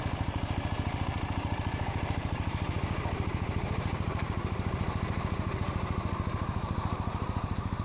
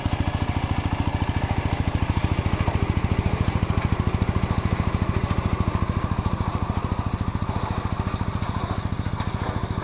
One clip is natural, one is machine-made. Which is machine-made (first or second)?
first